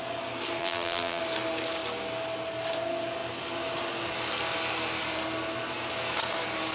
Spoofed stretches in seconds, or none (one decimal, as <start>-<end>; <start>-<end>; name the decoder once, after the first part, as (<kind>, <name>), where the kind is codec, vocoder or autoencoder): 0.6-1.2 (vocoder, BigVGAN v2)